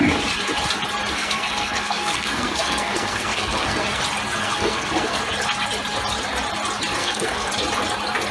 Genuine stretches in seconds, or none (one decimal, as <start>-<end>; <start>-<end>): 0.0-1.1; 4.0-4.4; 5.2-7.0; 7.5-8.3